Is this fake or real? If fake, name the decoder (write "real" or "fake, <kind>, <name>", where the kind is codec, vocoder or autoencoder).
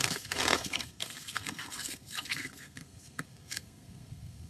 fake, codec, SNAC